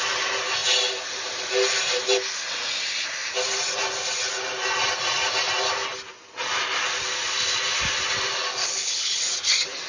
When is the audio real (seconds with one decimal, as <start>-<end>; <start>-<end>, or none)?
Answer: 0.0-8.6; 9.2-9.9